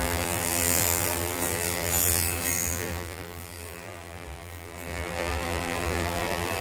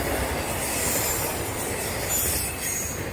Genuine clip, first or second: second